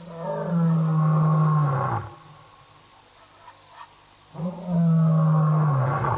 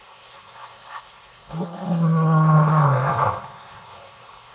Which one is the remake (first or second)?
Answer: second